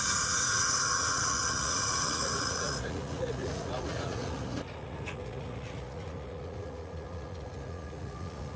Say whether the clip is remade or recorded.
remade